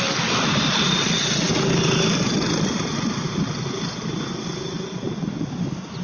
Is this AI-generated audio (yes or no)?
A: no